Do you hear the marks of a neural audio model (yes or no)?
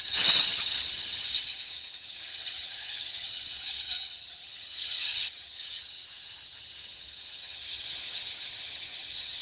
yes